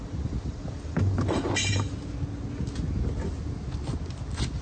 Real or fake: real